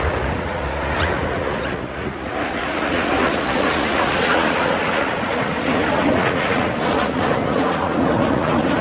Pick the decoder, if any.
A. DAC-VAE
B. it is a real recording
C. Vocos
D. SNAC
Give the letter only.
C